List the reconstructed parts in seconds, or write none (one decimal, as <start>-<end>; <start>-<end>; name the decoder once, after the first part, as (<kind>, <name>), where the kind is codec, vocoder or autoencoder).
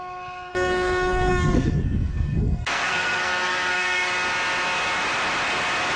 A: 0.5-4.1 (codec, SNAC)